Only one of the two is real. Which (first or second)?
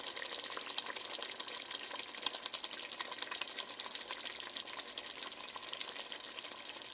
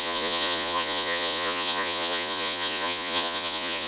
first